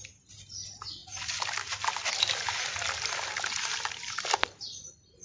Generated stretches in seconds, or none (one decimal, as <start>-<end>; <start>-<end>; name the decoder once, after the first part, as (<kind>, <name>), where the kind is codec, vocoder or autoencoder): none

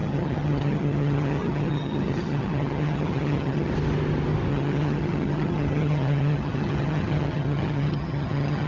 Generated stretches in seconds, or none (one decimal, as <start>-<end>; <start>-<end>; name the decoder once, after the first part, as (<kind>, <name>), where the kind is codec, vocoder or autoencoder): 0.0-3.7 (vocoder, HiFi-GAN); 4.5-8.7

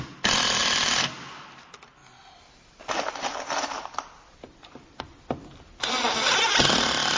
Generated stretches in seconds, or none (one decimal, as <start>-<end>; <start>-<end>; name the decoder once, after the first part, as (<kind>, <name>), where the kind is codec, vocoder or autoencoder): none